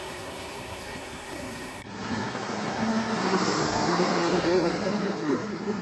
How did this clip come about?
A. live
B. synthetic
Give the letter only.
B